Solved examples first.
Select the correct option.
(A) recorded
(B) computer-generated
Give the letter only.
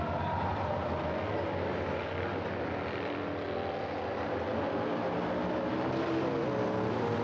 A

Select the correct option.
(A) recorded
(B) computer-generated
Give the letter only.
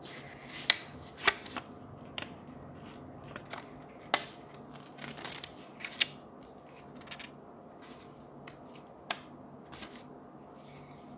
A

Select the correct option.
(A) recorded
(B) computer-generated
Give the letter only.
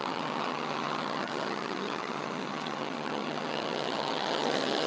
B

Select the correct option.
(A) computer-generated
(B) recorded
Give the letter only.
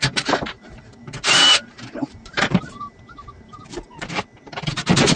A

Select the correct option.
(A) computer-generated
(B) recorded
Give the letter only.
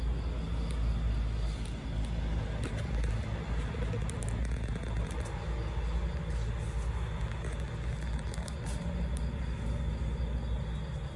B